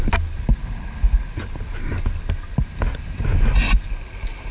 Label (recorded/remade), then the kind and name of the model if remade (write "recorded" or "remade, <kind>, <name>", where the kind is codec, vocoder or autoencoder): recorded